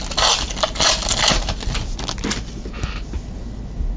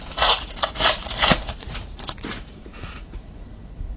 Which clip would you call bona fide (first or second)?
first